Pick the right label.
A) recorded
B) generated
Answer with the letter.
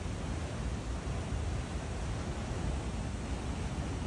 A